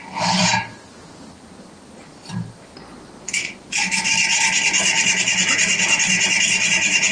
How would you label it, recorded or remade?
recorded